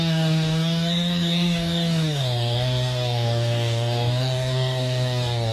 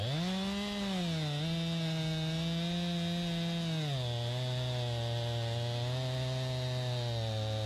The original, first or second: second